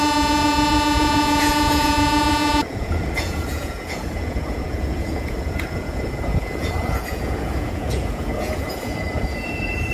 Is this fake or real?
fake